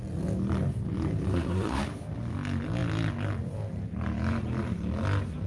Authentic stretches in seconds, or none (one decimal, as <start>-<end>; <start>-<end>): 0.0-1.3; 1.8-5.5